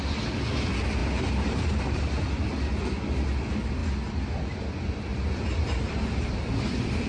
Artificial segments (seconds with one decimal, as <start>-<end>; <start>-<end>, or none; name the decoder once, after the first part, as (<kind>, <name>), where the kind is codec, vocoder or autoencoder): 1.0-2.0 (vocoder, BigVGAN v2); 5.1-7.1